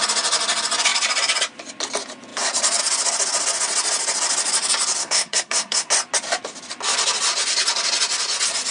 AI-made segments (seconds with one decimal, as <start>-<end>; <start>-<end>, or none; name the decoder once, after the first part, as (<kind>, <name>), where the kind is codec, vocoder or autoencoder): 5.0-5.9 (codec, SNAC)